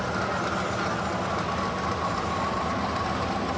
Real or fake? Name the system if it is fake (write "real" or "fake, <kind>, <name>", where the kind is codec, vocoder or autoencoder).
real